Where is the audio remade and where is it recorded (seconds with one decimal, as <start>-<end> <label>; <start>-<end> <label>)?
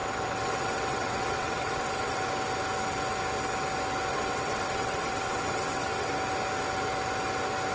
0.0-2.2 remade; 2.2-4.1 recorded; 4.1-6.1 remade; 6.1-7.7 recorded